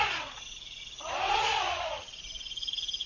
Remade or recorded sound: remade